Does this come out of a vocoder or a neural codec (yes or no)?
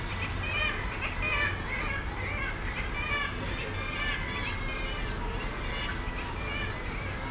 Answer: no